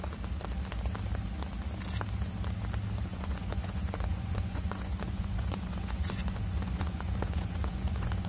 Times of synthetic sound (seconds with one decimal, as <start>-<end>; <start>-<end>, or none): 3.1-8.3